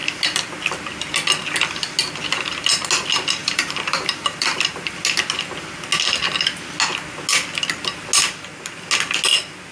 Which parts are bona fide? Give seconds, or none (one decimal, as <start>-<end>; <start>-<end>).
0.0-3.4; 4.9-9.7